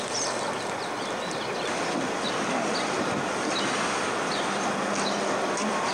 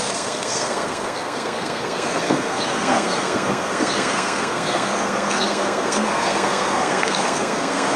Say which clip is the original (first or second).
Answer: first